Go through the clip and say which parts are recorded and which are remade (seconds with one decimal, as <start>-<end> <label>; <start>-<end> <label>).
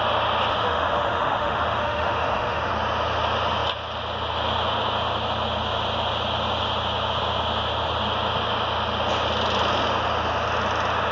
0.0-0.5 recorded; 0.5-2.7 remade; 2.7-11.1 recorded